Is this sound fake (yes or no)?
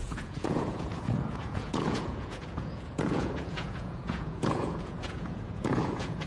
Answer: yes